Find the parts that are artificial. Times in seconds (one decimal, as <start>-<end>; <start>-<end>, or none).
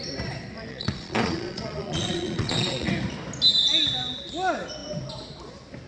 0.7-2.9